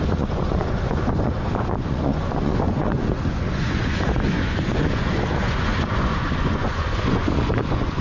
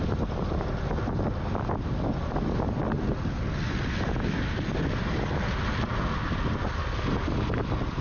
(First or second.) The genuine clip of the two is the second